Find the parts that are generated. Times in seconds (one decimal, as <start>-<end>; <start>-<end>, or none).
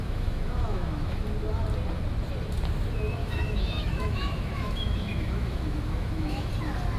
0.0-1.2; 3.2-6.5